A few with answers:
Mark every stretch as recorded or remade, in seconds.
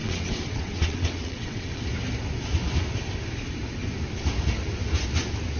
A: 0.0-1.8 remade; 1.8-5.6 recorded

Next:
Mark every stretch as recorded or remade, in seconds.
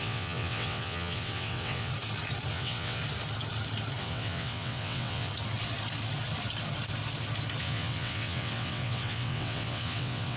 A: 0.0-1.9 remade; 1.9-2.5 recorded; 2.5-3.0 remade; 3.0-4.0 recorded; 4.0-5.3 remade; 5.3-7.6 recorded; 7.6-10.4 remade